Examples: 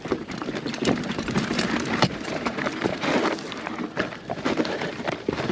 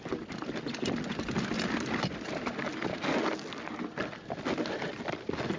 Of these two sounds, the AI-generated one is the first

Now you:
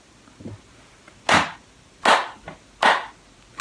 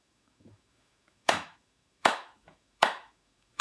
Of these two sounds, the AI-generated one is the second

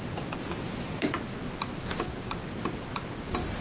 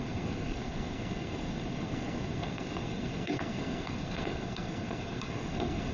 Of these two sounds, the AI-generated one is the second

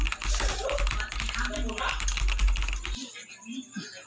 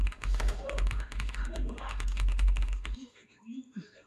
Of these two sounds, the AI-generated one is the second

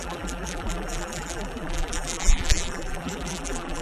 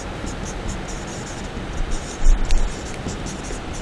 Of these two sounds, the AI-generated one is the first